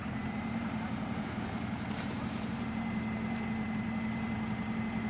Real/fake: fake